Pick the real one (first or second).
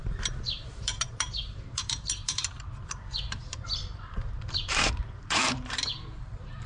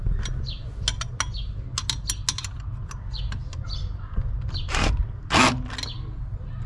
second